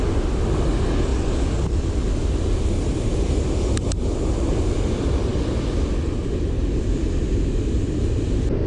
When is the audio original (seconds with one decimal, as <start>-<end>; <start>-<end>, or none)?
0.0-8.7